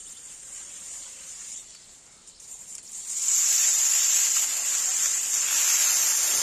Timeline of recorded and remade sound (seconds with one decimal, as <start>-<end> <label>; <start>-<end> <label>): 0.0-3.8 remade; 3.8-6.4 recorded